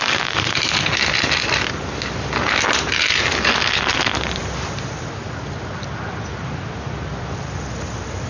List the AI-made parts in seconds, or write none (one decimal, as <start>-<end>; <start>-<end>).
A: none